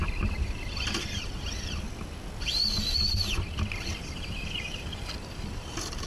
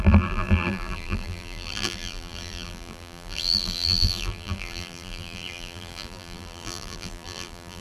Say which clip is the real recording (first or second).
first